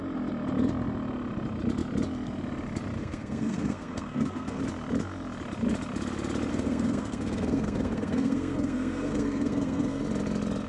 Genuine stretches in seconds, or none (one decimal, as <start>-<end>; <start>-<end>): 0.0-3.0; 4.6-6.5; 10.0-10.7